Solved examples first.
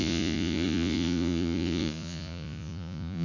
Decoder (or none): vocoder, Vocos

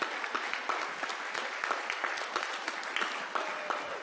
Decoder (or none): none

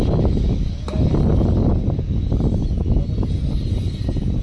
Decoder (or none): none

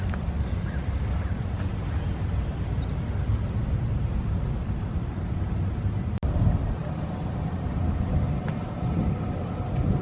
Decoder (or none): none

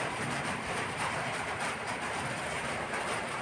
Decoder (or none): vocoder, BigVGAN v2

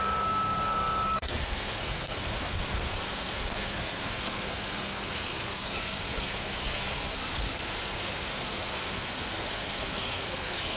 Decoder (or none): codec, SNAC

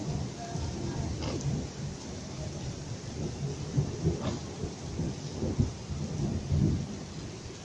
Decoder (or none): none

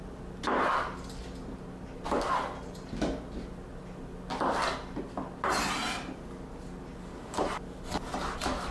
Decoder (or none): none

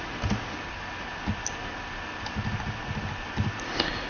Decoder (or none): none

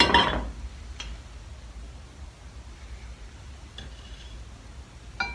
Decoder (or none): none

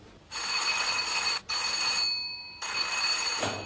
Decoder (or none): none